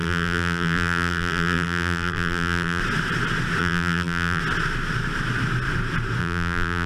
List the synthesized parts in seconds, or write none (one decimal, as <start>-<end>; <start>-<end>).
0.0-2.8; 3.6-4.4; 6.2-6.9